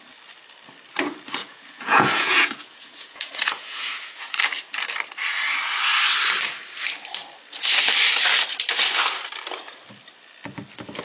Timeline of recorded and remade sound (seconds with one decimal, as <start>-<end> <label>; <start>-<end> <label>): 0.0-1.4 recorded; 1.4-4.3 remade; 4.3-11.0 recorded